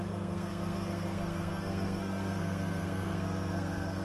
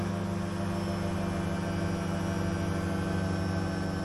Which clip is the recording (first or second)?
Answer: second